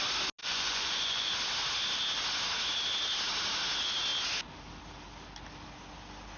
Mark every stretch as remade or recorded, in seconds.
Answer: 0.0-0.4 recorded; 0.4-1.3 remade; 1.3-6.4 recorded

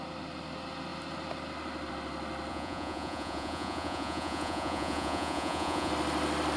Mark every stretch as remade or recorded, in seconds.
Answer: 0.0-2.5 recorded; 2.5-5.9 remade; 5.9-6.6 recorded

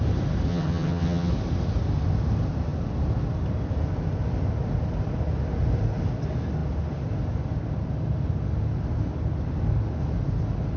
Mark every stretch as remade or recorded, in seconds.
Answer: 0.0-0.5 recorded; 0.5-1.3 remade; 1.3-10.8 recorded

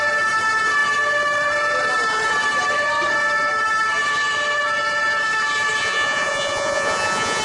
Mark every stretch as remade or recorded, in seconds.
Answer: 0.0-5.8 recorded; 5.8-7.4 remade

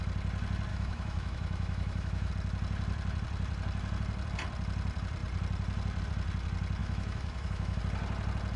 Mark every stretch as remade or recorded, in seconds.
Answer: 0.0-0.7 recorded; 0.7-2.3 remade; 2.3-6.8 recorded; 6.8-7.8 remade; 7.8-8.6 recorded

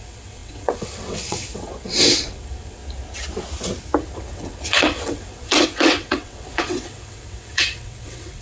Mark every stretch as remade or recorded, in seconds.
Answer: 0.0-2.8 remade; 2.8-4.1 recorded; 4.1-8.4 remade

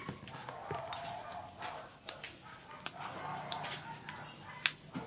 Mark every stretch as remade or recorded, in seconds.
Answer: 0.0-5.1 recorded

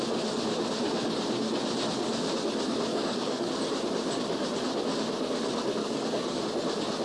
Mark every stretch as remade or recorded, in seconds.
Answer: 0.0-2.9 recorded; 2.9-3.5 remade; 3.5-5.8 recorded; 5.8-6.4 remade; 6.4-7.0 recorded